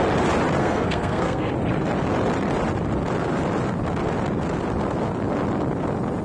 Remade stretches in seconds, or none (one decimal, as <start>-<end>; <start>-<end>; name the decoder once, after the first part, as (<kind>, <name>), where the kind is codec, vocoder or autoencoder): 0.6-1.5 (codec, SNAC)